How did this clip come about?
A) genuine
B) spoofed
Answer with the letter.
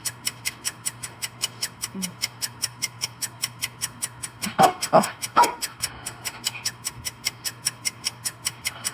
B